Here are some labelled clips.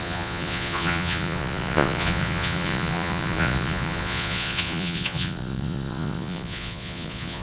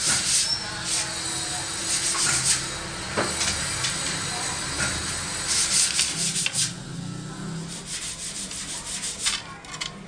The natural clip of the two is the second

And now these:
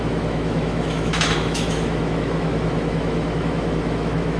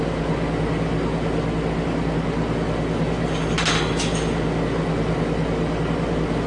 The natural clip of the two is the second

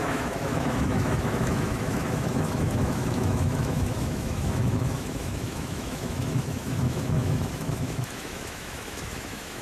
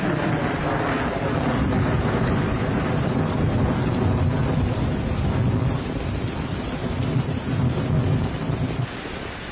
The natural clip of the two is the second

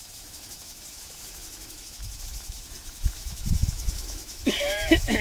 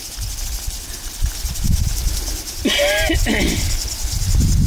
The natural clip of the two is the second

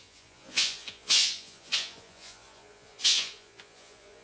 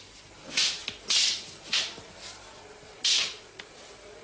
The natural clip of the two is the second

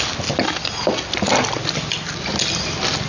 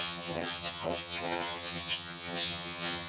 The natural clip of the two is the first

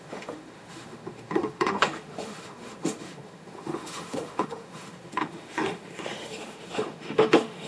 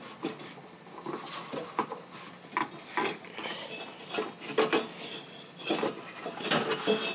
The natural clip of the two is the second